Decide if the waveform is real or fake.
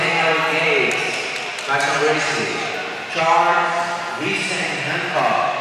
real